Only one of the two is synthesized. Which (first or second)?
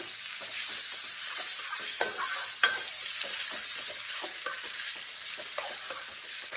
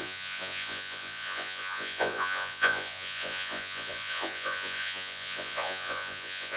second